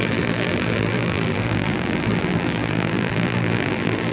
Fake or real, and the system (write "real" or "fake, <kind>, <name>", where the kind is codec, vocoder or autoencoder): fake, vocoder, BigVGAN v2